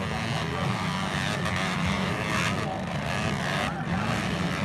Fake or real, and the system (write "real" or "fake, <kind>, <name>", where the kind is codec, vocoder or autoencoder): real